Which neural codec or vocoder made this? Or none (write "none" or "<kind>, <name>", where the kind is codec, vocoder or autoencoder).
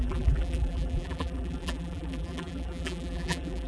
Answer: vocoder, BigVGAN v2